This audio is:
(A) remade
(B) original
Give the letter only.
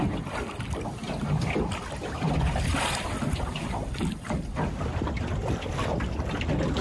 A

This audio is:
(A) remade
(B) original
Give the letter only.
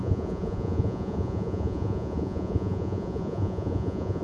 A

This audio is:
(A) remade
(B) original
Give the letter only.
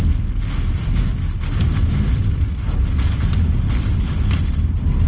B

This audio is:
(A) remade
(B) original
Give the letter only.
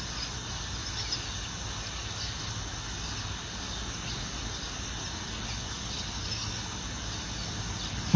B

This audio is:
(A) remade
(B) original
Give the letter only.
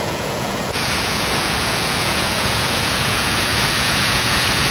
A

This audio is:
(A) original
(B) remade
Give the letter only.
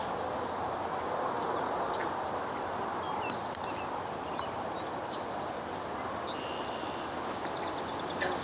A